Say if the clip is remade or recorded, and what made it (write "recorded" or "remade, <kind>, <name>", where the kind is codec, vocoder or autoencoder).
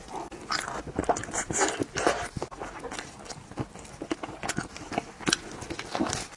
recorded